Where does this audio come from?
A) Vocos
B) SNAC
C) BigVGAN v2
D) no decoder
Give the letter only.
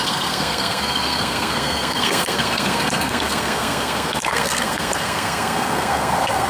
B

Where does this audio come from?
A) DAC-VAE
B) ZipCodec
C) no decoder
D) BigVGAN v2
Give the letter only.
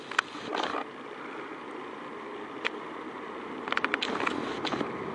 C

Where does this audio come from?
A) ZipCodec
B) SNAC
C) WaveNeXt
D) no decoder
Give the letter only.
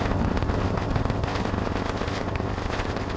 A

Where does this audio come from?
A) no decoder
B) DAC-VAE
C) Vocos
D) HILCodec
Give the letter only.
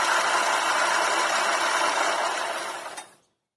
A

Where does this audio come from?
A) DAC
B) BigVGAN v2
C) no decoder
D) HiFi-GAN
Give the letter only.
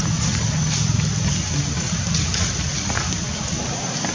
C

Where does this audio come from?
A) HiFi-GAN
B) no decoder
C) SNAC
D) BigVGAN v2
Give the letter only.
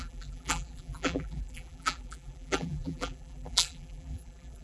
D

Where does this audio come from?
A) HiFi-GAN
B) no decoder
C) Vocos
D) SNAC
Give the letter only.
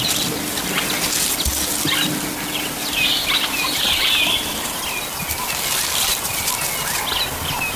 B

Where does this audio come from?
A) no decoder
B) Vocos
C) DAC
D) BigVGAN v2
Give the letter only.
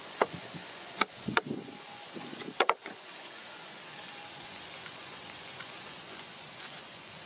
B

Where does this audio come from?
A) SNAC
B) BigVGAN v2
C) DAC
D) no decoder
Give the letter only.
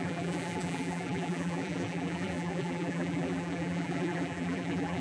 B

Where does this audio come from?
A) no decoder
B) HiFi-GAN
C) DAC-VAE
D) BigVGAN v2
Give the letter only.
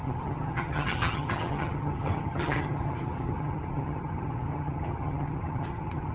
B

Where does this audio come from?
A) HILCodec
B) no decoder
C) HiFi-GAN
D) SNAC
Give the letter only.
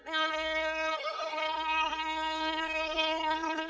D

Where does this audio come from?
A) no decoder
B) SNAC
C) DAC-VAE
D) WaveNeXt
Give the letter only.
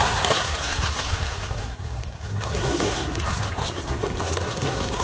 B